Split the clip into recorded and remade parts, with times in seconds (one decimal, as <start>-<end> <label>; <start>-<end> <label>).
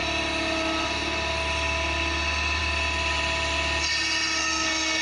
0.0-4.4 recorded; 4.4-5.0 remade